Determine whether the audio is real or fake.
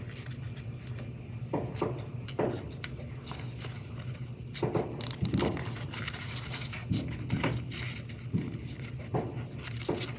real